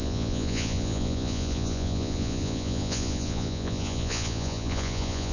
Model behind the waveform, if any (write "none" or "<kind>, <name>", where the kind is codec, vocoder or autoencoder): vocoder, Vocos